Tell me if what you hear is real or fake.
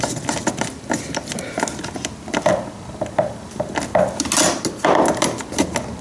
real